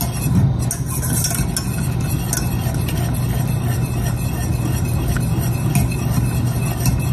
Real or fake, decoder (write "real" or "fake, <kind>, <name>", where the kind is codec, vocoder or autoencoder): real